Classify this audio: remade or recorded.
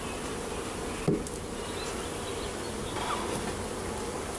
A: recorded